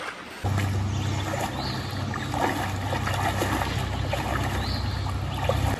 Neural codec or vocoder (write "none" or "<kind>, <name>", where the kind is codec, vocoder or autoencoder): none